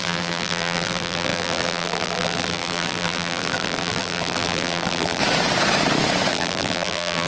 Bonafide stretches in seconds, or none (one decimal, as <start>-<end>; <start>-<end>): 5.2-6.3